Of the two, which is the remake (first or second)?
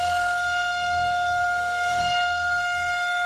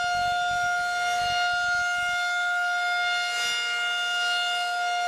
first